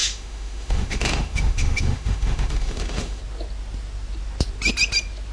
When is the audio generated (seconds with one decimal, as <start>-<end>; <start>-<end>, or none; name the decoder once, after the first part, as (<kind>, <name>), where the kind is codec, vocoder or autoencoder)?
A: 0.0-3.2 (autoencoder, DAC-VAE)